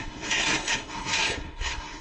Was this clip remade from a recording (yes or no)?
yes